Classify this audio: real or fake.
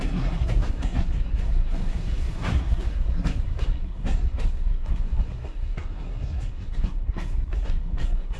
fake